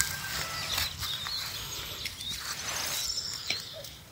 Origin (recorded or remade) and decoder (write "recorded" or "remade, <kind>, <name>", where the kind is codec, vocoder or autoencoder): recorded